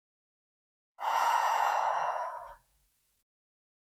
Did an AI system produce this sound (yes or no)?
yes